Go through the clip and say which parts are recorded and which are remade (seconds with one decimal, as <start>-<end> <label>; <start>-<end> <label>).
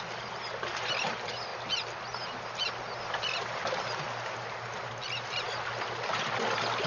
0.0-6.9 recorded